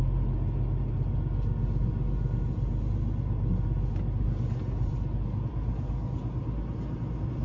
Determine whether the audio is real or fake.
real